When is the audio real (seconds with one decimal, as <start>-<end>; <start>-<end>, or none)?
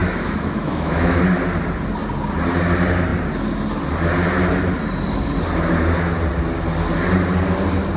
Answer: 1.2-8.0